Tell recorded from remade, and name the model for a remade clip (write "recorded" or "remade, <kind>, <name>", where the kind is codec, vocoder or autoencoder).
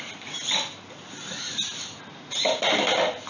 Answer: recorded